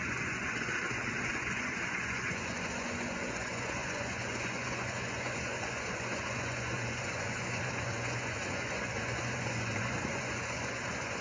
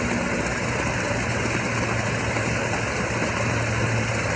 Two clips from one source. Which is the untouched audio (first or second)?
second